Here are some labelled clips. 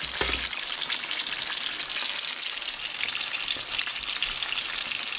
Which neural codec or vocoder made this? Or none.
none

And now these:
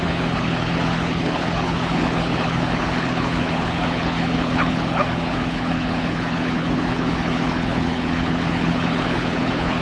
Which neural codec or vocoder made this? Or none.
codec, HILCodec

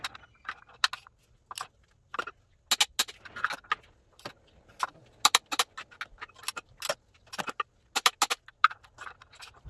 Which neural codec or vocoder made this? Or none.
none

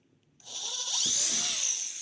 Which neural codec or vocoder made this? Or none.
none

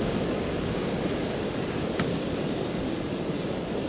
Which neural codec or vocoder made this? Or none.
codec, DAC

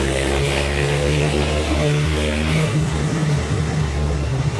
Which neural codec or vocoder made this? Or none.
codec, SNAC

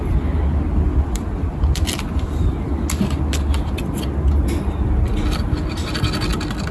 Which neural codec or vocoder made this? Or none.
none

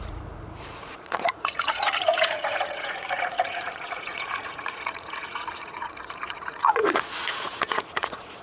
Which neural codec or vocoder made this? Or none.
vocoder, Vocos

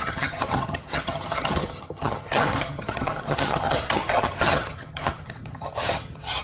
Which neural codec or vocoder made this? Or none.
vocoder, HiFi-GAN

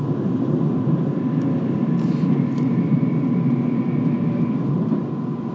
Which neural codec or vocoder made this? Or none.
none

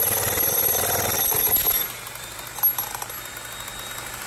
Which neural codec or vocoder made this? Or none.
none